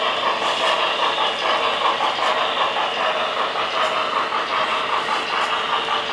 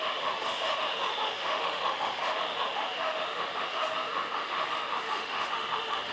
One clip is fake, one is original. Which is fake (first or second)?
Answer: second